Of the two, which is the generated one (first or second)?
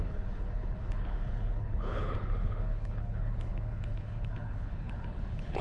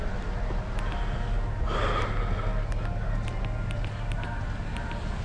first